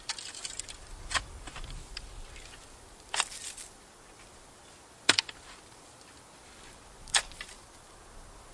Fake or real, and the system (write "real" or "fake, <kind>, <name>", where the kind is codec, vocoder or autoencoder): fake, vocoder, BigVGAN v2